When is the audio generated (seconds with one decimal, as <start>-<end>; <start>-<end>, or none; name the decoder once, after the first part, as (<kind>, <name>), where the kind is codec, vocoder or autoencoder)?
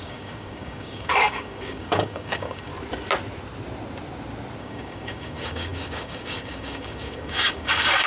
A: 0.0-2.7 (codec, DAC); 4.6-8.1